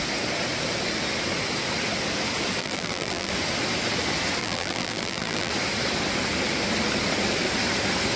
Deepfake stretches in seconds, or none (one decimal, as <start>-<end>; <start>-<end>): 2.6-3.3; 4.4-5.5